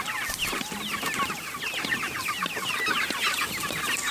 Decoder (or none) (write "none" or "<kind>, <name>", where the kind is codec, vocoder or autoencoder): none